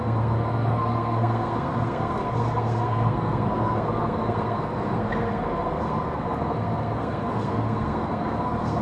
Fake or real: fake